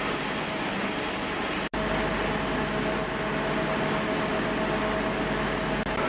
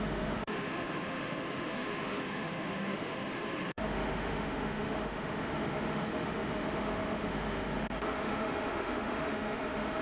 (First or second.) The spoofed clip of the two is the second